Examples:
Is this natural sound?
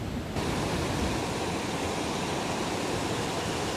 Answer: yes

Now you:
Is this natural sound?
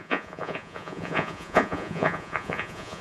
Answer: no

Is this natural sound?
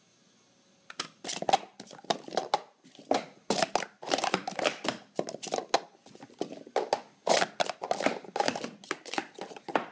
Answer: yes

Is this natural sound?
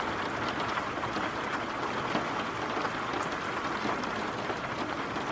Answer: yes